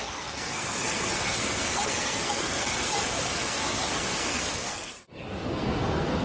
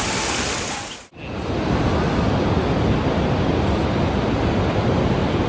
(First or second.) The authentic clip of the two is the second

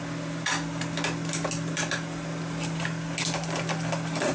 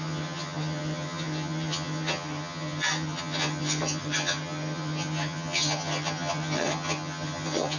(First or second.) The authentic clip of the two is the first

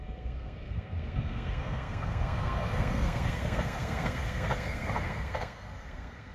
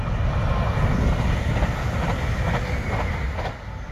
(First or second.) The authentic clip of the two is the second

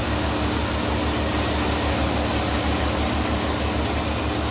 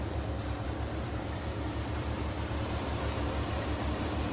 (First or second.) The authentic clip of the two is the first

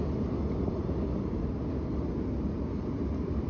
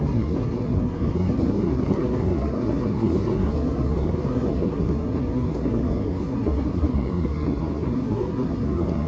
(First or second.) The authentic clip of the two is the first